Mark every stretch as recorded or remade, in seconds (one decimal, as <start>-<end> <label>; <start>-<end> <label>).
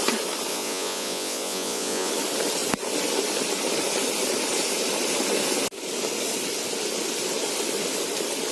0.0-0.5 recorded; 0.5-2.1 remade; 2.1-8.5 recorded